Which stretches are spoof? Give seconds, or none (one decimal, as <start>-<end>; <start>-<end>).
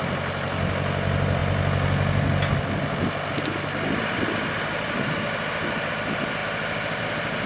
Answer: none